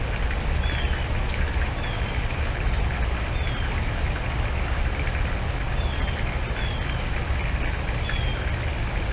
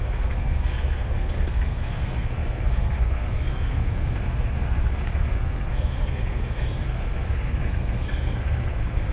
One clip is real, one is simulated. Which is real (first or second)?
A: first